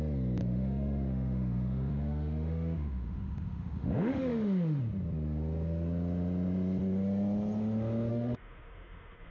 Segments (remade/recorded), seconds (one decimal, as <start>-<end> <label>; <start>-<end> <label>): 0.0-0.4 recorded; 0.4-4.8 remade; 4.8-8.1 recorded; 8.1-9.3 remade